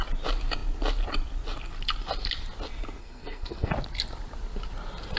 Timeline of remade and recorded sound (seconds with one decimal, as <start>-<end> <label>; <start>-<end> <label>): 0.0-3.0 recorded; 3.0-3.7 remade; 3.7-5.2 recorded